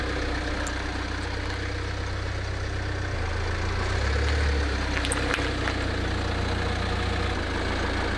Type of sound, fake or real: real